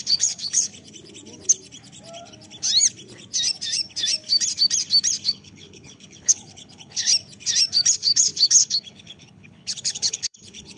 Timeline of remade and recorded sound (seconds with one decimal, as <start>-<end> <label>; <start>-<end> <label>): 0.0-0.7 remade; 0.7-5.3 recorded; 5.3-7.1 remade; 7.1-7.9 recorded; 7.9-10.8 remade